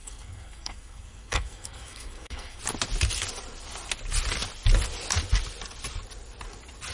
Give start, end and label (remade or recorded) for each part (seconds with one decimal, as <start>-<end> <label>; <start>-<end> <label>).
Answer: 0.0-2.6 remade; 2.6-6.9 recorded

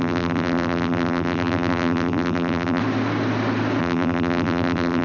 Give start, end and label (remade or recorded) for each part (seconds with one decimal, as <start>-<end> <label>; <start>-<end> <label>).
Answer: 0.0-2.8 remade; 2.8-3.8 recorded; 3.8-5.0 remade

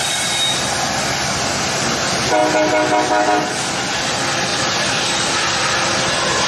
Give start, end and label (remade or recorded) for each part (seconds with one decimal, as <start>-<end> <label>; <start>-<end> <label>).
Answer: 0.0-6.5 recorded

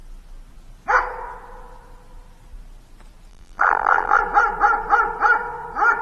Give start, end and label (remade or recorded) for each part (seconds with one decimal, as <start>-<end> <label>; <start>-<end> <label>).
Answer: 0.0-3.3 recorded; 3.3-4.2 remade; 4.2-6.0 recorded

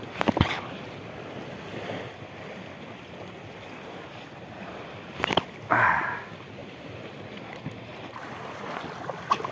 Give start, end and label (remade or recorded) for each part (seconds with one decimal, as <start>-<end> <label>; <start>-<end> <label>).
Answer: 0.0-9.5 recorded

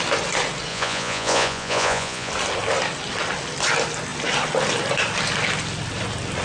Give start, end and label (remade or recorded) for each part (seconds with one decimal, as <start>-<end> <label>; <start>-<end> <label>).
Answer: 0.0-0.7 recorded; 0.7-2.3 remade; 2.3-6.4 recorded

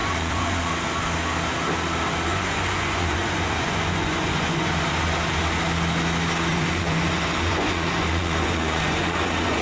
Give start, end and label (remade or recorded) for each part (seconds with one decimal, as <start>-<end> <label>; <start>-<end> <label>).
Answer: 0.0-0.7 remade; 0.7-2.3 recorded; 2.3-4.7 remade; 4.7-6.5 recorded; 6.5-9.6 remade

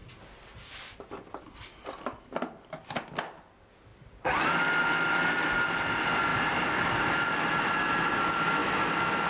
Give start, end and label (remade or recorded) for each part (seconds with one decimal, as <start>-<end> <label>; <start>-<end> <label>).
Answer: 0.0-1.3 remade; 1.3-6.3 recorded; 6.3-7.5 remade; 7.5-9.3 recorded